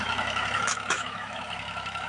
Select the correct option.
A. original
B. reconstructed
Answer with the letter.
B